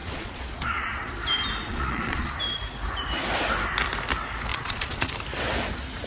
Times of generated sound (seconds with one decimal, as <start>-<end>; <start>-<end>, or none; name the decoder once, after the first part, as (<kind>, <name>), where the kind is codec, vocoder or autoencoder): 0.0-1.1 (vocoder, Vocos); 1.7-2.4; 4.5-5.1